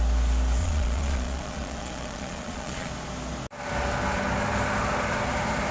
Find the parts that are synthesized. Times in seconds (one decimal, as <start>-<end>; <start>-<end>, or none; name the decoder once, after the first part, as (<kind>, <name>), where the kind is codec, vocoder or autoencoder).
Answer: 0.6-2.9 (vocoder, Vocos)